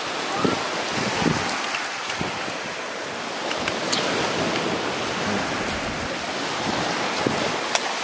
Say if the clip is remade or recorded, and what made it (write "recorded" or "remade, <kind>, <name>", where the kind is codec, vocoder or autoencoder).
remade, vocoder, BigVGAN v2